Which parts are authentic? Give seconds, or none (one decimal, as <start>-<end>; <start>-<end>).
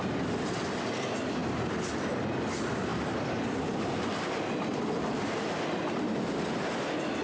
0.0-7.2